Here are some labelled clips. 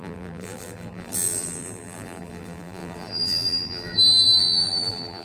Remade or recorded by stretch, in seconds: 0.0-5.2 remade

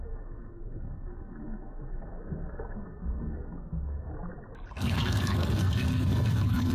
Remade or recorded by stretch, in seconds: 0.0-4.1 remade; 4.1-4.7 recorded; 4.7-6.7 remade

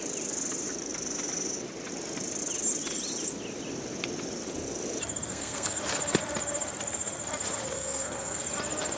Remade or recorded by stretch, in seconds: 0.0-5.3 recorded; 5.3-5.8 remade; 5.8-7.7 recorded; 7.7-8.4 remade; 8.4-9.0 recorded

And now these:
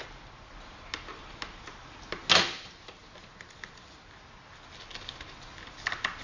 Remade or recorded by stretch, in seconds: 0.0-6.2 recorded